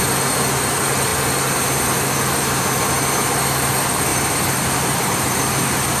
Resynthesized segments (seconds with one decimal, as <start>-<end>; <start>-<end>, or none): 4.1-5.4